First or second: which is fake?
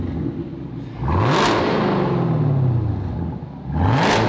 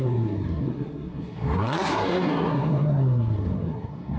second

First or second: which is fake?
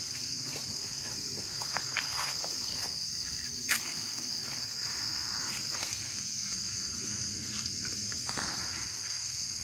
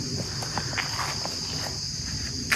first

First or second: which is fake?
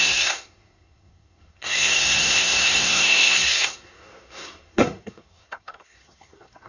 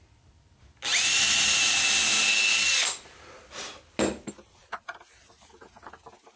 first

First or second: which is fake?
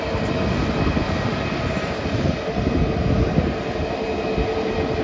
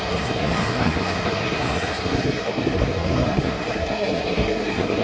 second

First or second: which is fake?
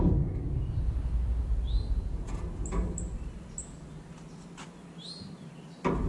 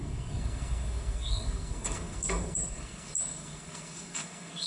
second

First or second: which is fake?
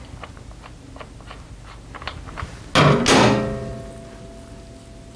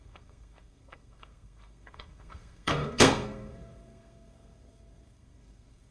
second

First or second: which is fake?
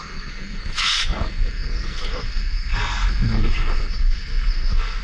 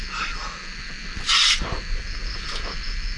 first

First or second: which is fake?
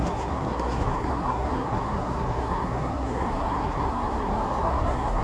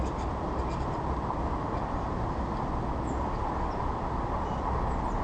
first